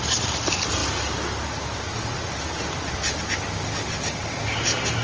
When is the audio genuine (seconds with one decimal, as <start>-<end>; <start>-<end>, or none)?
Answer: 0.0-5.0